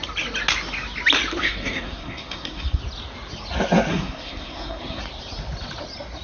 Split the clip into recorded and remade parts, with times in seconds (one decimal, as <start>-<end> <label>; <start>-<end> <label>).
0.0-1.4 recorded; 1.4-2.8 remade; 2.8-3.9 recorded; 3.9-5.0 remade; 5.0-6.2 recorded